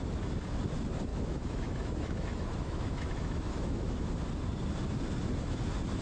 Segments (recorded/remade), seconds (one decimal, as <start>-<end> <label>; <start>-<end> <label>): 0.0-1.1 recorded; 1.1-4.1 remade; 4.1-6.0 recorded